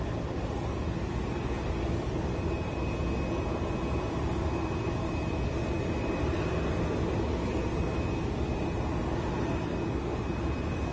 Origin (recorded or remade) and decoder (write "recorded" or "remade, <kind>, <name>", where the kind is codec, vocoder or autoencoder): recorded